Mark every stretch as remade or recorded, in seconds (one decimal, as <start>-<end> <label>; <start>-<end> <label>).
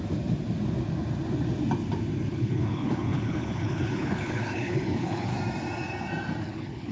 0.0-2.3 recorded; 2.3-5.3 remade; 5.3-6.4 recorded; 6.4-6.9 remade